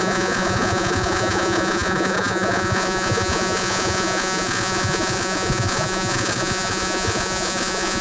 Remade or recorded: remade